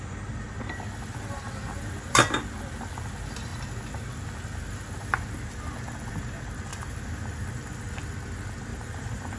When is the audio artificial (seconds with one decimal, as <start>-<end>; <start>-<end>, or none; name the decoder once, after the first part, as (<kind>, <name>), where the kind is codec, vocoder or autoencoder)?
6.7-7.2 (vocoder, BigVGAN v2); 8.7-9.4